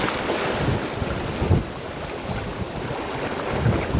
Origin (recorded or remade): recorded